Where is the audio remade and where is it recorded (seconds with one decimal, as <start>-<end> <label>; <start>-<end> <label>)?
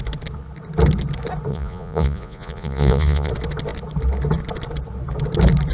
0.0-1.5 recorded; 1.5-3.3 remade; 3.3-5.7 recorded